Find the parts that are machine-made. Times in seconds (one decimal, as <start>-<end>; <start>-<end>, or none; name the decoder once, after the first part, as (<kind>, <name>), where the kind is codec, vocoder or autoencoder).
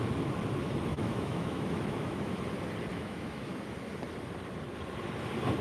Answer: 0.9-2.4 (autoencoder, DAC-VAE); 2.9-3.5